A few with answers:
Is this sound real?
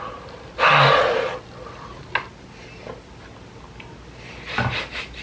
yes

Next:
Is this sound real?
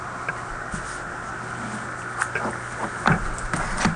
yes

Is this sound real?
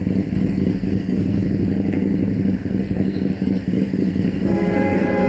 no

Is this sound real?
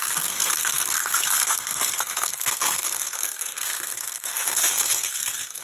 no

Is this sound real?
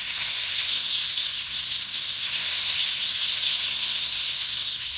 no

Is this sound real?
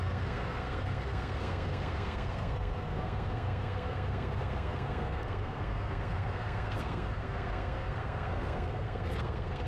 no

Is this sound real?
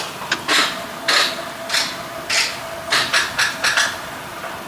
yes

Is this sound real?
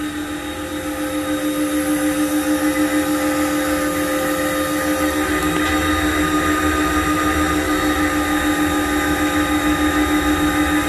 yes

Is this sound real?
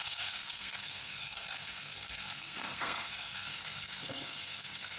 no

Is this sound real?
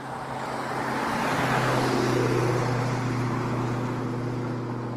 yes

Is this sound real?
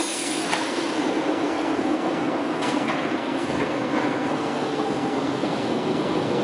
no